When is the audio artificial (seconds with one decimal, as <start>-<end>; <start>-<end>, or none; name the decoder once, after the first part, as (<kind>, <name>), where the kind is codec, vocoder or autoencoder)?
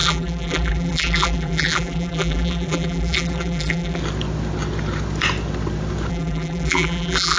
0.0-4.0 (vocoder, BigVGAN v2); 6.1-7.4